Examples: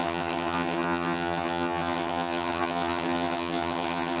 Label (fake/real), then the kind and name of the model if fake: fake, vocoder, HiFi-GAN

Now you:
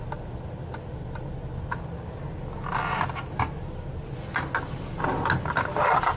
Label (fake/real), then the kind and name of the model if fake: real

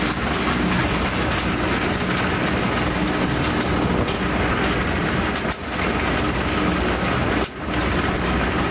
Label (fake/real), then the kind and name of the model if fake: real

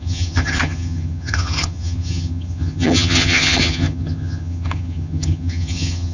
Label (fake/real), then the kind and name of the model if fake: fake, vocoder, HiFi-GAN